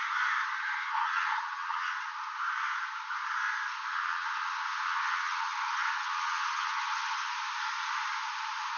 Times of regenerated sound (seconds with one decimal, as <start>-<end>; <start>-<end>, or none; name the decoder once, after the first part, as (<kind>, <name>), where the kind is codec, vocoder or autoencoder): 0.6-2.0 (vocoder, HiFi-GAN); 3.9-7.3